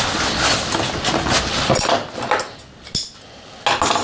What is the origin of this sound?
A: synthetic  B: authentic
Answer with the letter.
B